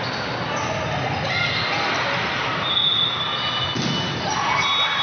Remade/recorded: recorded